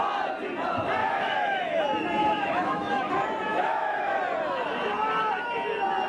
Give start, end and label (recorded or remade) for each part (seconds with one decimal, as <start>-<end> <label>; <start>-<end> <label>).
0.0-1.0 recorded; 1.0-1.8 remade; 1.8-2.2 recorded; 2.2-3.1 remade; 3.1-3.5 recorded; 3.5-4.2 remade; 4.2-6.1 recorded